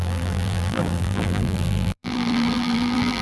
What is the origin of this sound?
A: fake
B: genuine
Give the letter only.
A